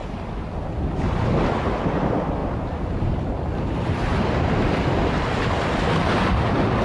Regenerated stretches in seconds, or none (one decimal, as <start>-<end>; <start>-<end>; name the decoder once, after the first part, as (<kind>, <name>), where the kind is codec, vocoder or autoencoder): none